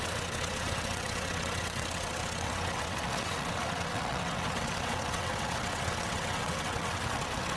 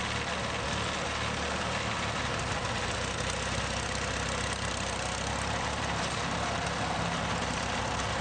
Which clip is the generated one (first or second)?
first